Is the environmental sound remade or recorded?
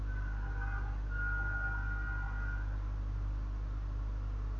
recorded